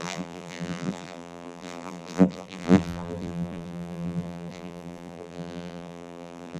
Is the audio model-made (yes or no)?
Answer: yes